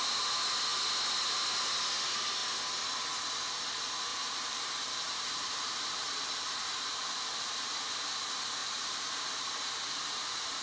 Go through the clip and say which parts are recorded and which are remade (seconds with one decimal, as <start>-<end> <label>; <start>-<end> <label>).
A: 0.0-4.1 recorded; 4.1-8.2 remade; 8.2-8.6 recorded; 8.6-10.6 remade

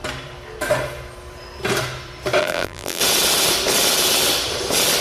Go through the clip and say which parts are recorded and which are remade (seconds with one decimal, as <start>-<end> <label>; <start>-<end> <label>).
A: 0.0-2.4 recorded; 2.4-3.0 remade; 3.0-5.0 recorded